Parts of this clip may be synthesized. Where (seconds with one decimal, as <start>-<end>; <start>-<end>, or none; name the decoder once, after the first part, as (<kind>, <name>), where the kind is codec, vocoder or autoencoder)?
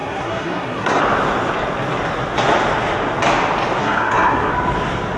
0.0-1.0 (codec, SNAC); 3.8-4.5